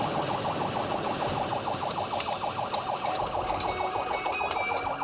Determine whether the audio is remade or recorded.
recorded